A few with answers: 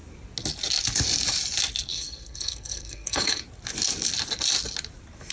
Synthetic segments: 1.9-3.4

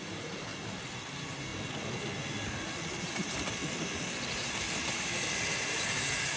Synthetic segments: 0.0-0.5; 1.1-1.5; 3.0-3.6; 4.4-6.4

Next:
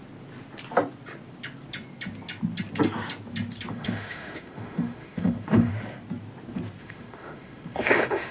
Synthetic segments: 3.7-5.7; 6.8-8.3